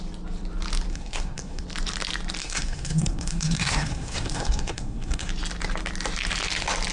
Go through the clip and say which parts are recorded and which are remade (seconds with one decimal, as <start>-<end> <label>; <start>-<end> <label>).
0.0-0.9 recorded; 0.9-1.6 remade; 1.6-2.4 recorded; 2.4-5.3 remade; 5.3-6.9 recorded